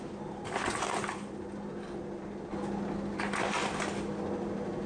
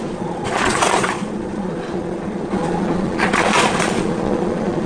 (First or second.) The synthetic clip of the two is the second